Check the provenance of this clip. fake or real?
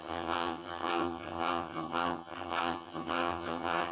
fake